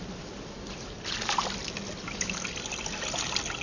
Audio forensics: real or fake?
real